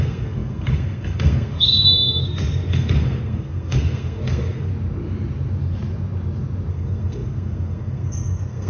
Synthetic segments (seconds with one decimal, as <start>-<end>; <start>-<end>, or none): 0.0-4.7; 6.7-8.7